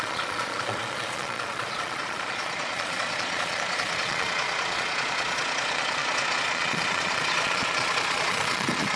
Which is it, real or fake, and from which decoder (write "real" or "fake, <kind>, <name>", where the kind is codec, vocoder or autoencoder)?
fake, vocoder, Vocos